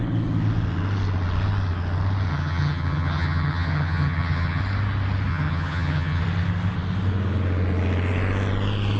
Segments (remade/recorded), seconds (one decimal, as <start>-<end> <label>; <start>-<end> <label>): 0.0-2.3 recorded; 2.3-4.6 remade; 4.6-5.3 recorded; 5.3-6.2 remade; 6.2-9.0 recorded